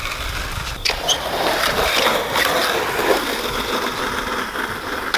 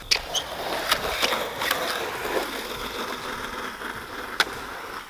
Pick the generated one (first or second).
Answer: first